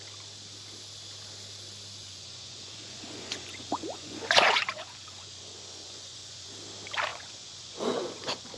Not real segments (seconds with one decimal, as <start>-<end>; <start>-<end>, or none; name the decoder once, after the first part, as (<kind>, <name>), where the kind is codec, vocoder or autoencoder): 2.0-6.5 (vocoder, Vocos); 7.1-8.6